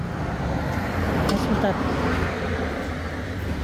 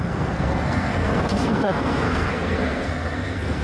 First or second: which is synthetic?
second